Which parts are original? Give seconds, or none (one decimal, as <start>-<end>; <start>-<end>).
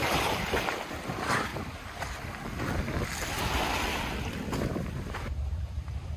1.5-4.6